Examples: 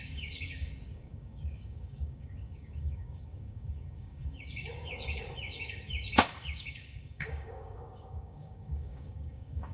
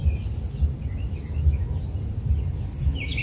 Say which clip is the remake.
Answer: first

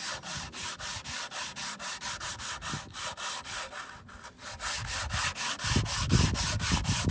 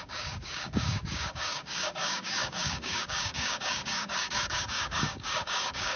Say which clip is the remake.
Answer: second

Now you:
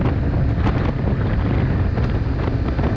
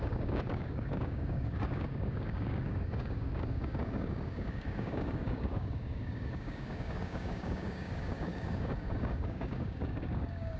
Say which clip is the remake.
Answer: second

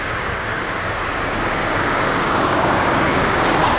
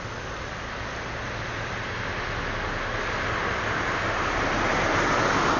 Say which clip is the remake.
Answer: first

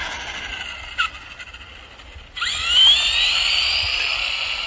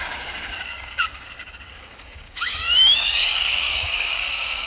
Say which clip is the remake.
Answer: second